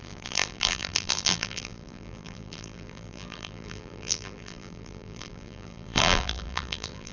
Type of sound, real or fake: fake